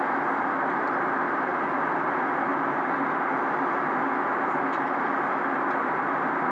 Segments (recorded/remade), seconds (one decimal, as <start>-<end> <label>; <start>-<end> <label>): 0.0-6.5 recorded